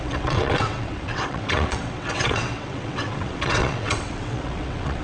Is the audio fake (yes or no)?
yes